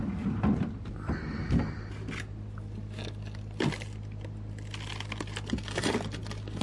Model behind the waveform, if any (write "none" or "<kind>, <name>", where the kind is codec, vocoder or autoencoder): none